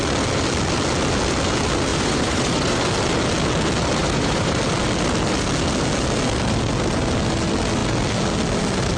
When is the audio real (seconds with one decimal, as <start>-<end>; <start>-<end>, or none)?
0.0-1.9; 2.8-4.0; 4.6-9.0